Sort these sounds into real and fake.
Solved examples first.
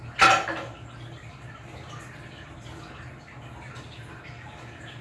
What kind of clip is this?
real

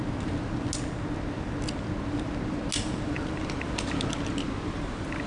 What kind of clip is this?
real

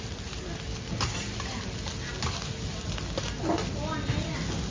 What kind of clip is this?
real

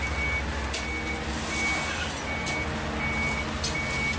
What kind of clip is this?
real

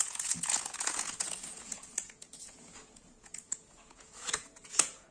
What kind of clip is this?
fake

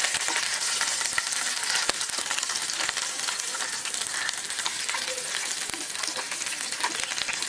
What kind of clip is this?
real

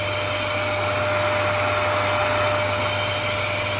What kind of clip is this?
real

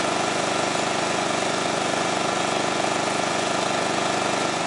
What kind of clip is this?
fake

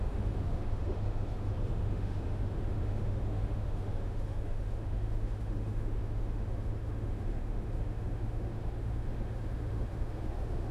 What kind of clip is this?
fake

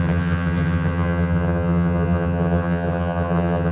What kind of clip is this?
fake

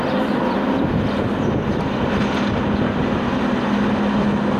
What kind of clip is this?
real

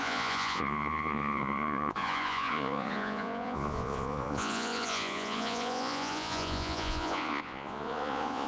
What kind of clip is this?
fake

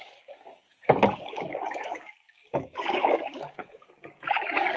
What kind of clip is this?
fake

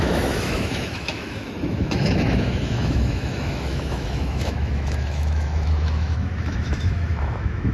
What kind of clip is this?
fake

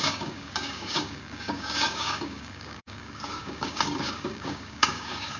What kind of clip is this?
fake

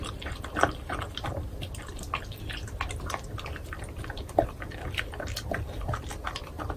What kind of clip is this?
real